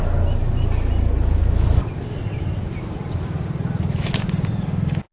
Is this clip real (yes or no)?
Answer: yes